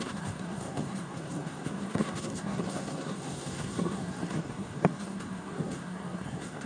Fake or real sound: fake